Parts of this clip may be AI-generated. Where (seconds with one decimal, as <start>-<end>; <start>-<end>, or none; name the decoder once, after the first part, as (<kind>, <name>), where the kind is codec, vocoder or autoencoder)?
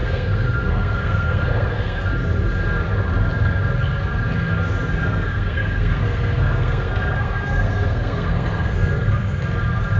0.0-2.1 (codec, SNAC); 5.0-9.4